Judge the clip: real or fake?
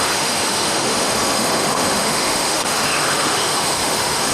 fake